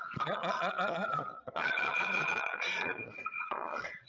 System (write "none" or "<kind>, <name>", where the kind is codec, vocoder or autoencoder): vocoder, Vocos